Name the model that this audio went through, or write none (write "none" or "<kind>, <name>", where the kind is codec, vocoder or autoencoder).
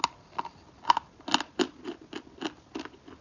none